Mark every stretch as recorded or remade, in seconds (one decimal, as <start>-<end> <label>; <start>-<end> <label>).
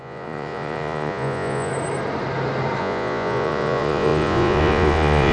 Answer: 0.0-1.7 remade; 1.7-2.8 recorded; 2.8-5.3 remade